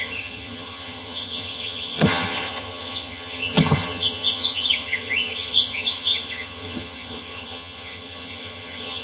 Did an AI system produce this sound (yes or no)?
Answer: yes